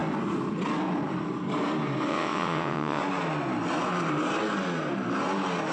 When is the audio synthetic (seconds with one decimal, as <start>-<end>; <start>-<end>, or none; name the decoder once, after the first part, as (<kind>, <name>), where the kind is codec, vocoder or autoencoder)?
2.1-3.0 (vocoder, WaveNeXt)